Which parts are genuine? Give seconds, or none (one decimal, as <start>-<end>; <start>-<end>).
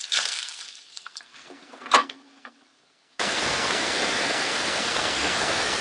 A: none